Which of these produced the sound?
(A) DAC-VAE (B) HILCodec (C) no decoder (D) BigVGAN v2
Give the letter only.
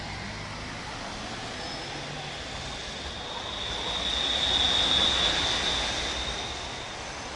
C